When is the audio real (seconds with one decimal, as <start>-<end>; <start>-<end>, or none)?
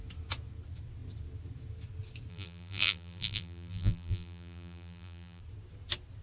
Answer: 0.0-2.3; 5.4-6.2